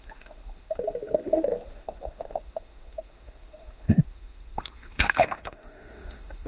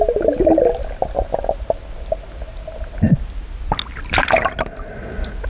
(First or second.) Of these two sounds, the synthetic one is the first